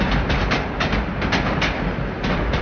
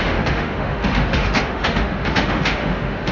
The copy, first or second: second